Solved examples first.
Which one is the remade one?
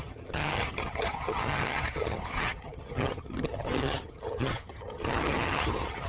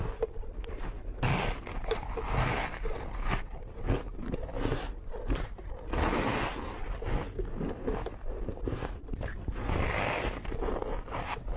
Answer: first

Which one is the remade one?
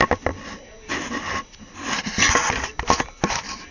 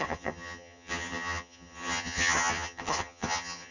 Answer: second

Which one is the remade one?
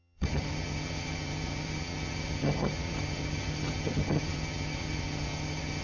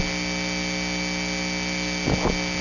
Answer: first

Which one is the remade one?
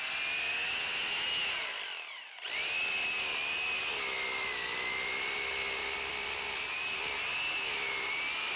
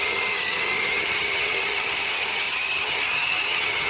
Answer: second